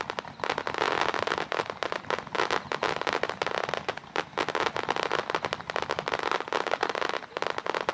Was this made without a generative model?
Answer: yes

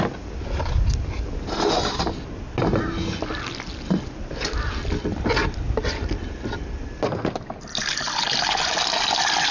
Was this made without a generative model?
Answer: yes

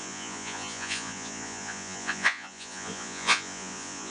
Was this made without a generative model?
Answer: no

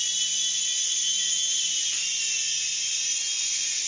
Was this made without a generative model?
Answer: yes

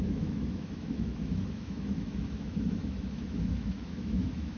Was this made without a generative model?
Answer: no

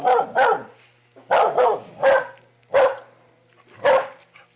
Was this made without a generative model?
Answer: yes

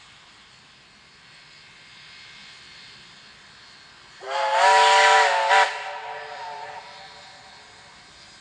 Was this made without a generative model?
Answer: yes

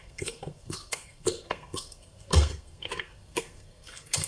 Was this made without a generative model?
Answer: no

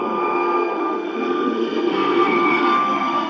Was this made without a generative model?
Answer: no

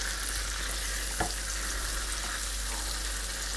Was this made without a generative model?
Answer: yes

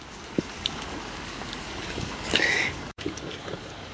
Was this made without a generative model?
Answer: no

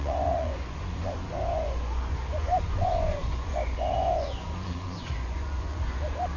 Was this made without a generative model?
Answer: no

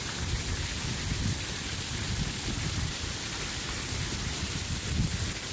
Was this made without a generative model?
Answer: yes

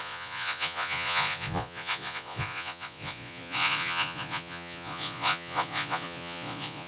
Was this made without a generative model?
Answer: no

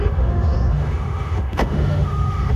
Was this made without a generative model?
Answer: no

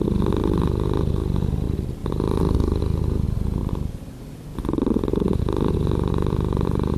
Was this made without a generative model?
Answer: yes